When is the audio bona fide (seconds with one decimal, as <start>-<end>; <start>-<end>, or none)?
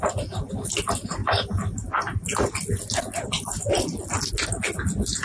0.0-5.2